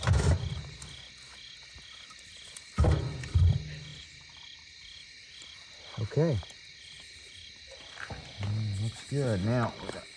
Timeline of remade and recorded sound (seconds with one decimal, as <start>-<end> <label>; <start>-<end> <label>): 0.0-10.2 recorded